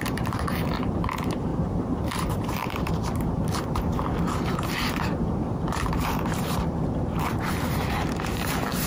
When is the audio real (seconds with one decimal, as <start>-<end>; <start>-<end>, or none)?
none